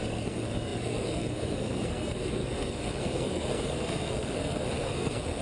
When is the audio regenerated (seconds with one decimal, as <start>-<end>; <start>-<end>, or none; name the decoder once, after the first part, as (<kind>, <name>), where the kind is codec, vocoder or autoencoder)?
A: 0.0-5.4 (codec, SNAC)